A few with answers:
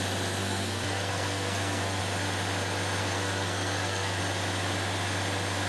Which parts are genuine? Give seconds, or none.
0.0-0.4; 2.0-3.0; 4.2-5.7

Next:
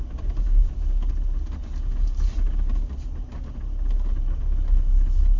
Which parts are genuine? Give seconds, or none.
0.0-5.4

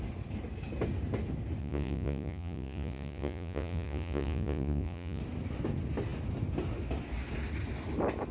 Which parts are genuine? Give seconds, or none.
0.0-1.6; 5.2-8.3

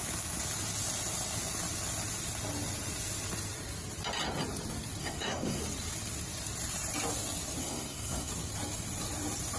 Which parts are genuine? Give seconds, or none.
0.0-5.0; 5.6-7.6; 8.3-9.6

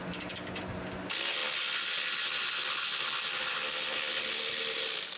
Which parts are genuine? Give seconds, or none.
0.0-5.2

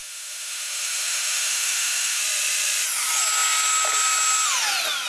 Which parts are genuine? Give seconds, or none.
2.2-5.1

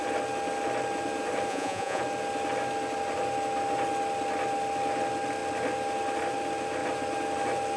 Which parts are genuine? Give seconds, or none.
0.0-1.5; 2.0-7.8